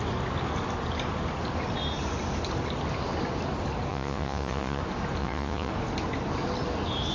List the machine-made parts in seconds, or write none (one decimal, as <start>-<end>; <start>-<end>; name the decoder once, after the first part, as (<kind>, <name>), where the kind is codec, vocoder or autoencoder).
3.9-4.8 (vocoder, Vocos); 5.2-5.7